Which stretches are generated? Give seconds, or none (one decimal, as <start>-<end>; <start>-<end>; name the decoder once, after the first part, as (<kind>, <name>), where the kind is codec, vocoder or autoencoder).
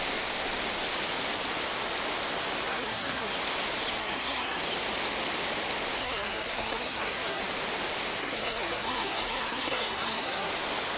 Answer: 2.7-3.3 (codec, SNAC); 4.0-4.6; 6.0-7.4; 8.2-10.5